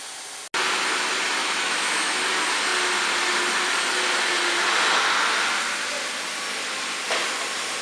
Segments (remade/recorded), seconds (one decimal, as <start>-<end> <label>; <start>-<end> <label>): 0.0-1.4 recorded; 1.4-2.2 remade; 2.2-7.8 recorded